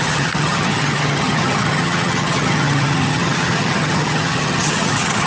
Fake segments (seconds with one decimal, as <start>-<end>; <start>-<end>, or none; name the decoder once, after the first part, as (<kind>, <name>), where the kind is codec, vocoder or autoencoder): 0.0-5.3 (vocoder, HiFi-GAN)